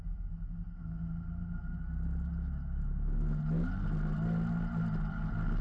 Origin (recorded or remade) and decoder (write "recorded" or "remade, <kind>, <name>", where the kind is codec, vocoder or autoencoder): recorded